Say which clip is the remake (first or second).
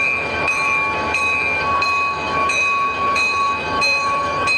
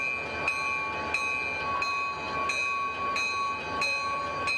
first